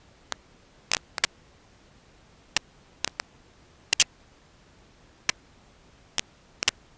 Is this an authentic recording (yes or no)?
yes